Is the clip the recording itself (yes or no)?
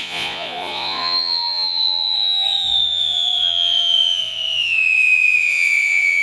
no